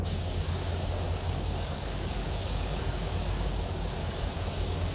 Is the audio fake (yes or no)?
yes